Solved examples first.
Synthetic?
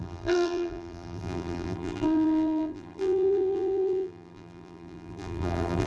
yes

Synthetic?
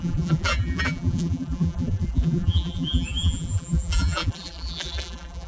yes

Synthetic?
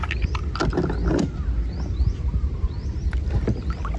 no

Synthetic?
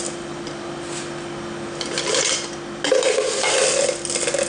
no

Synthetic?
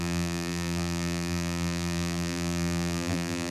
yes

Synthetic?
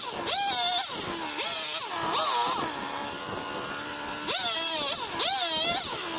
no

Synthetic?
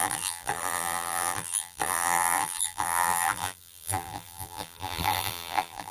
yes